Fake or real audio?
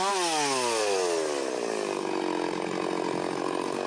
real